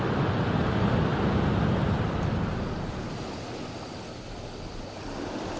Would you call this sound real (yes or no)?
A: yes